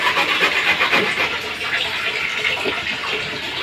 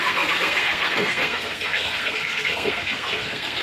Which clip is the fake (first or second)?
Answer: second